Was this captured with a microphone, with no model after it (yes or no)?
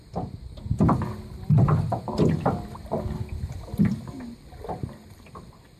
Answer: yes